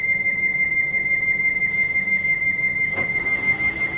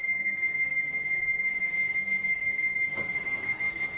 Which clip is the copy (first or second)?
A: second